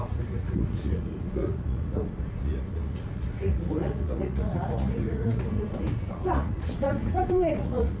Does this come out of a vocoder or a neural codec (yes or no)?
yes